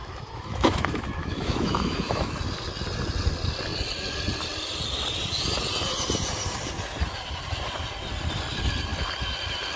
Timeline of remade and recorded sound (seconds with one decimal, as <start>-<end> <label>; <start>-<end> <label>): 0.0-2.3 remade; 2.3-9.8 recorded